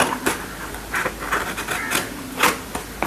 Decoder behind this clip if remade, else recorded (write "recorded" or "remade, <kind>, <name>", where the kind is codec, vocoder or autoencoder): recorded